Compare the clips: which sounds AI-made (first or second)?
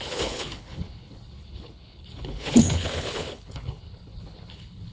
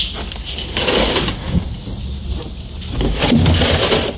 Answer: first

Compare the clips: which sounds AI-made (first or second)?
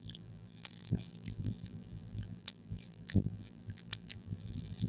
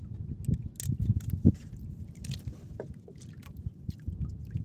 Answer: first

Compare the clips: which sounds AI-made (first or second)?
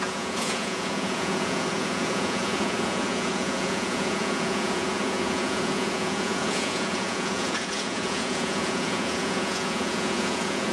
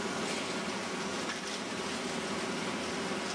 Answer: first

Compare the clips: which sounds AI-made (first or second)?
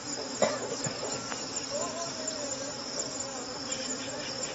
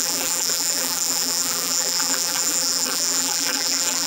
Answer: second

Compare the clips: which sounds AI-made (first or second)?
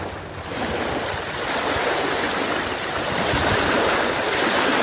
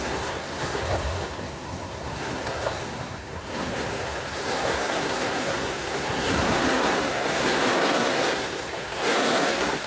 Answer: second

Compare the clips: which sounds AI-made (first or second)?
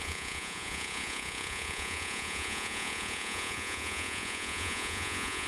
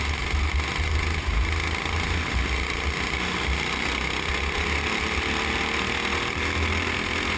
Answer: first